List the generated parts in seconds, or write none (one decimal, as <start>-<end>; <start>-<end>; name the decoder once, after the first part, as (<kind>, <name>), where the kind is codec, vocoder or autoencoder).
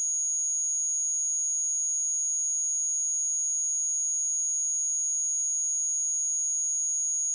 none